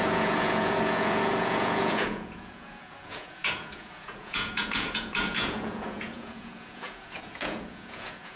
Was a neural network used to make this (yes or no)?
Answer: yes